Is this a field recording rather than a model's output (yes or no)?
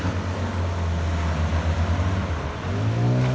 yes